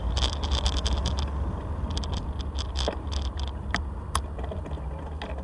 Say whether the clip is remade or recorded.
recorded